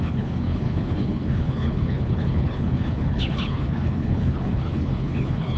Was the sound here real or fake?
fake